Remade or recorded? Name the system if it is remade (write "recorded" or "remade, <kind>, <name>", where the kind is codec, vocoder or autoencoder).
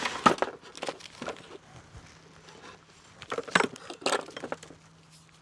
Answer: recorded